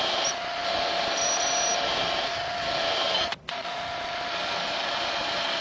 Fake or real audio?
real